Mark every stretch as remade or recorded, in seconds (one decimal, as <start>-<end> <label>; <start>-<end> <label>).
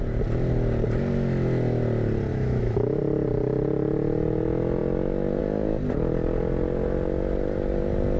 0.0-2.3 recorded; 2.3-3.0 remade; 3.0-8.2 recorded